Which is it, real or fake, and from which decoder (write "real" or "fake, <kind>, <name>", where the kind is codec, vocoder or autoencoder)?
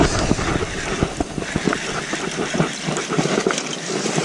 real